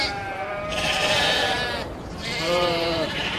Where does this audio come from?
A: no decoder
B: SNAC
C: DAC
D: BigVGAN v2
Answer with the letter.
D